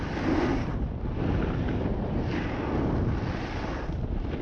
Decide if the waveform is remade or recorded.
recorded